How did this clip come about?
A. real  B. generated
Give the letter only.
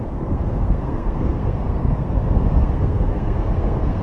B